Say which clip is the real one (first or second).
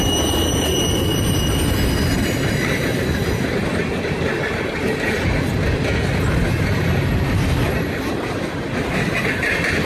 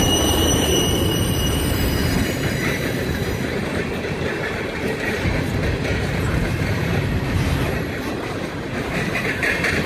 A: first